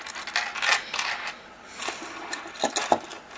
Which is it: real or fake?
real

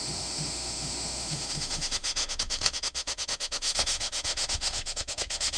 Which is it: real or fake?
fake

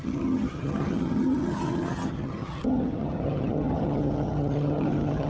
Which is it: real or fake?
fake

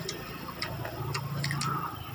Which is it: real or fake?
real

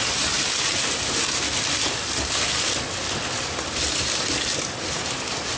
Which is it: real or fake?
real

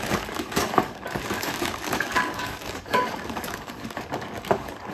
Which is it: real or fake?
fake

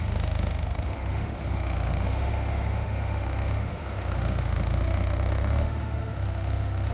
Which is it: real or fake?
fake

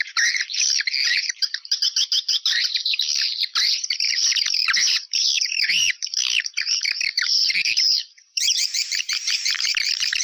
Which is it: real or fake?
fake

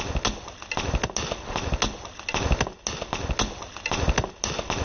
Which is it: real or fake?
real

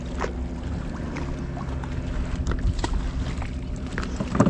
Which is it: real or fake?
real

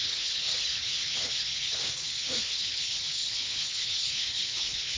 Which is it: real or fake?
fake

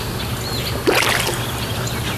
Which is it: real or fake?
real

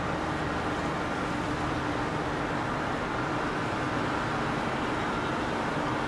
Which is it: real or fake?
real